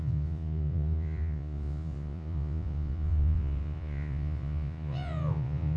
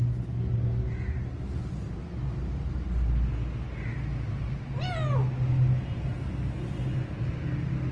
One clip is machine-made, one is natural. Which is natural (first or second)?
second